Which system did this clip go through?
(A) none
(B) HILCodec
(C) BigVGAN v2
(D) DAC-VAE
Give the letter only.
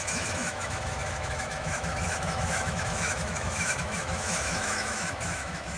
D